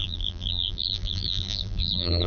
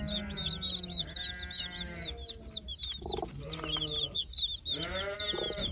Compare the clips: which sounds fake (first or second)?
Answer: first